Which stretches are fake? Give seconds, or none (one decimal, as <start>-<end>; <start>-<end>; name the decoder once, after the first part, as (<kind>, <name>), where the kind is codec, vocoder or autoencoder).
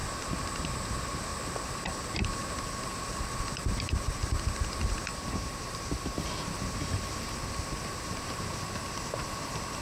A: 0.0-0.7 (vocoder, BigVGAN v2); 5.1-6.2; 7.9-8.7